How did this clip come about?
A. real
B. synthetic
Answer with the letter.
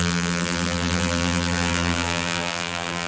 B